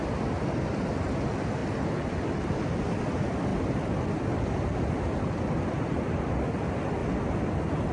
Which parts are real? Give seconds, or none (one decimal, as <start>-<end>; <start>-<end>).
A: 3.5-5.2; 7.0-7.9